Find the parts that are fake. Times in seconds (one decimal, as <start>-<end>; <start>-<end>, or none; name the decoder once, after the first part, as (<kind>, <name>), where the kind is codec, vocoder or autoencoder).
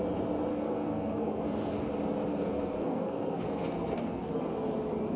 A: 0.5-1.9 (codec, SNAC); 2.3-4.3